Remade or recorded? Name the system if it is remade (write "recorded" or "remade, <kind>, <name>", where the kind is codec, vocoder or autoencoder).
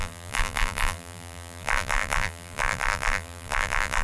remade, vocoder, BigVGAN v2